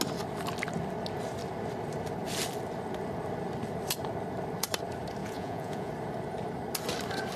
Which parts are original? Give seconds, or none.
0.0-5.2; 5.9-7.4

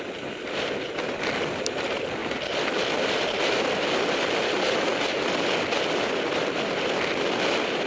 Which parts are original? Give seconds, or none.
0.0-7.9

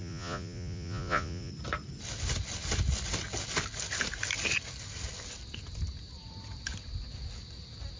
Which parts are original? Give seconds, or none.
1.5-8.0

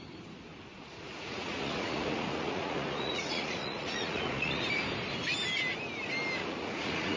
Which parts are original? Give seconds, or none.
0.0-0.7; 4.6-6.4

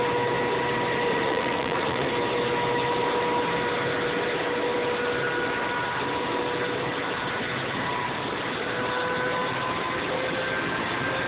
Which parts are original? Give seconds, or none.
0.0-1.1; 2.1-11.3

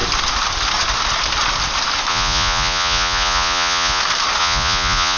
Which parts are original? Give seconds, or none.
0.0-2.1; 4.0-4.4

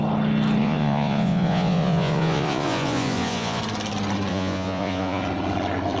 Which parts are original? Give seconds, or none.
0.0-0.6; 3.6-4.3; 5.2-6.0

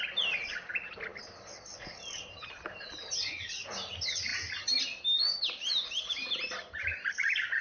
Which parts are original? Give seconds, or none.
0.0-7.6